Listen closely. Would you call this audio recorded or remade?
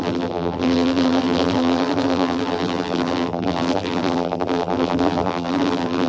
remade